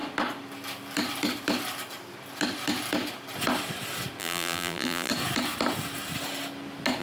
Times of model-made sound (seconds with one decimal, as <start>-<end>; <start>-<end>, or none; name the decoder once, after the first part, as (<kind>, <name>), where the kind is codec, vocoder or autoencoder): 4.2-5.1 (vocoder, BigVGAN v2)

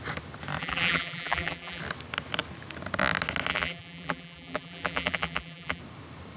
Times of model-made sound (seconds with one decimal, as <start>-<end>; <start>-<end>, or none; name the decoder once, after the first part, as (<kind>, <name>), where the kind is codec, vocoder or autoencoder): 0.6-1.8 (vocoder, BigVGAN v2); 3.5-5.8